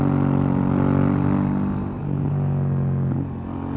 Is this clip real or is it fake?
real